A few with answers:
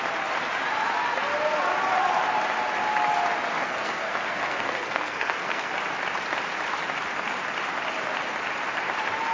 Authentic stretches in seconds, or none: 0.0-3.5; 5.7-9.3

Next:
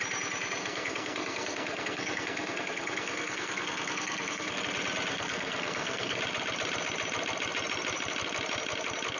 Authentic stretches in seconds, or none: 0.0-0.6; 4.6-5.1; 6.2-9.2

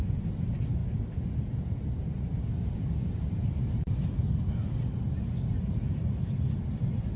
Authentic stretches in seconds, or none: 0.0-7.2

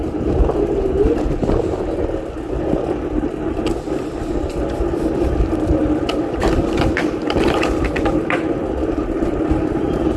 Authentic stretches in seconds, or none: 0.0-10.2

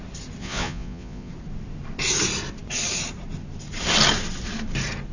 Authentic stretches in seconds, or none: 0.0-0.4; 1.3-5.1

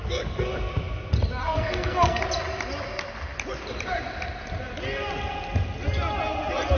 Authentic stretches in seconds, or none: 0.0-1.4; 2.2-6.8

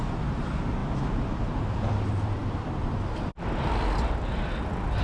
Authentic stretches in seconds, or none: 0.0-5.0

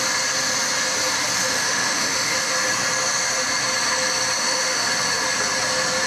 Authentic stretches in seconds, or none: 0.0-1.4; 2.5-4.4; 4.9-6.1